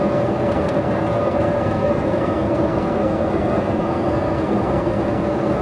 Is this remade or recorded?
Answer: remade